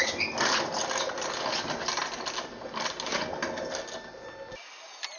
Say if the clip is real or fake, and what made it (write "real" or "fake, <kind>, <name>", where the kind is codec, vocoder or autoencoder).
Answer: real